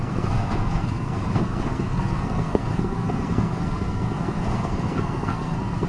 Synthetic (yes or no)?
yes